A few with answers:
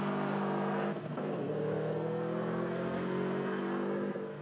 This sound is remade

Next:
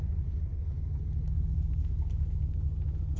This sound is recorded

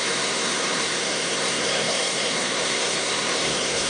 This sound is remade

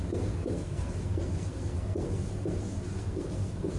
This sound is remade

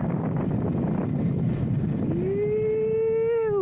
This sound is recorded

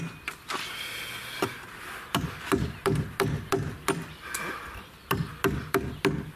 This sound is recorded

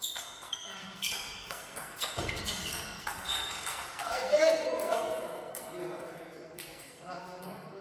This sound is remade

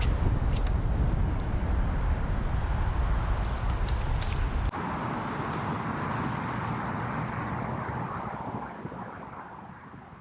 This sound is recorded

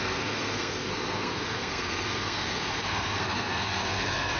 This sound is remade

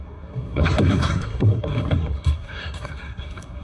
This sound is remade